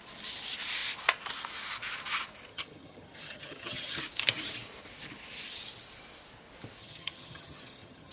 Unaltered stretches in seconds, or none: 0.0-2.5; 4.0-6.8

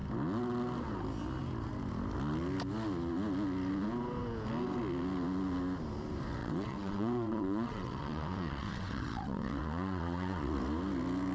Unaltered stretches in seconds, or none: 0.0-6.4; 10.6-11.3

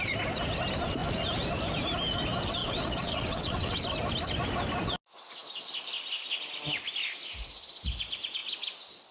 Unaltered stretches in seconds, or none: 0.0-2.6; 3.8-9.1

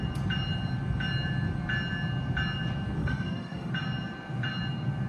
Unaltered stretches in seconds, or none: 0.0-3.0; 3.7-5.1

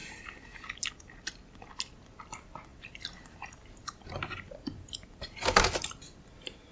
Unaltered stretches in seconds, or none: 0.0-2.7

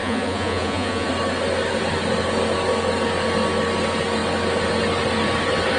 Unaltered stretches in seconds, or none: 1.1-5.8

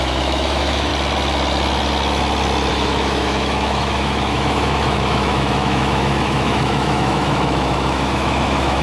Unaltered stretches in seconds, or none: 0.9-2.7

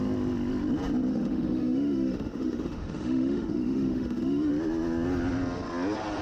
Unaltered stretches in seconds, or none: 0.0-1.1; 4.5-6.2